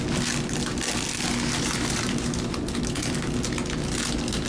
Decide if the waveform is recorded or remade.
recorded